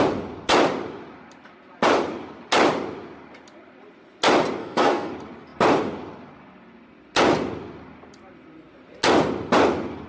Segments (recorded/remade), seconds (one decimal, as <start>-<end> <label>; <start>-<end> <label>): 0.0-4.6 recorded; 4.6-5.1 remade; 5.1-10.1 recorded